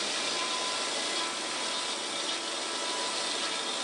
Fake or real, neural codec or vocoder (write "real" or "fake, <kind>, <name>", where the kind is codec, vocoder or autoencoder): real